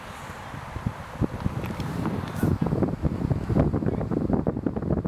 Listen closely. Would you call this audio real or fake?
real